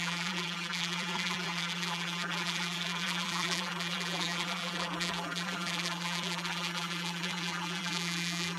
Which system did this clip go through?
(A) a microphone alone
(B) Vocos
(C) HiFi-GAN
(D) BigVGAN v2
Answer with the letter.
D